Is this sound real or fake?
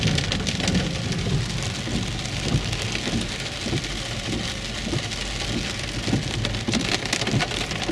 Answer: real